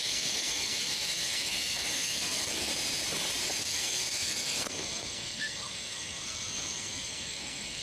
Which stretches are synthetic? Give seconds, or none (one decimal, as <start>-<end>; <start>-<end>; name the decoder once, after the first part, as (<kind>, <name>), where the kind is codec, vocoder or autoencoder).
0.0-2.7 (codec, SNAC); 3.6-7.8